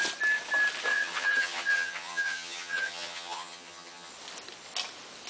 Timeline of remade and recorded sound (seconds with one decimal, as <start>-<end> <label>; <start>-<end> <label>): 0.0-0.9 recorded; 0.9-4.1 remade; 4.1-5.3 recorded